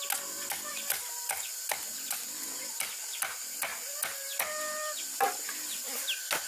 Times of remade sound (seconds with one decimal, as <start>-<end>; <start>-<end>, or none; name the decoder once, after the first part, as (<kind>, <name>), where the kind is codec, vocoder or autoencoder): none